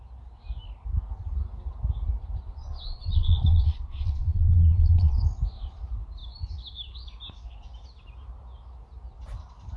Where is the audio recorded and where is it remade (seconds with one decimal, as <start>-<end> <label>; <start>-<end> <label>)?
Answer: 0.0-2.6 recorded; 2.6-5.2 remade; 5.2-9.8 recorded